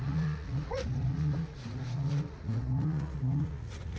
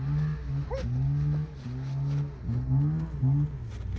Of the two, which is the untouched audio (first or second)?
second